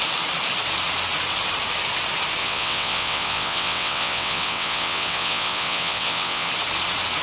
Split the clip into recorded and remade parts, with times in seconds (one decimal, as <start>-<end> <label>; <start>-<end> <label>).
0.0-2.4 recorded; 2.4-6.5 remade; 6.5-7.2 recorded